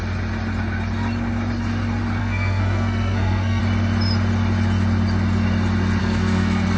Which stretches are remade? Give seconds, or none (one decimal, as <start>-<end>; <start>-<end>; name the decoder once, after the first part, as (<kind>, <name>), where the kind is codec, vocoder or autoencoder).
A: 2.2-3.6 (codec, SNAC); 6.0-6.8